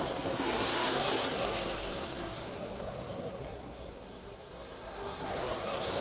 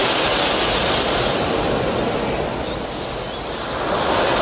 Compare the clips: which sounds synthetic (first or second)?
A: first